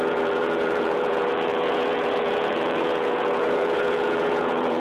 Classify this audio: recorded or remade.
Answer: remade